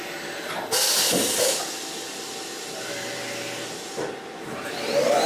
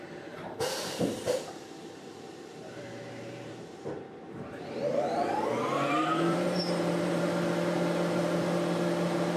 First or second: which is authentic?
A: first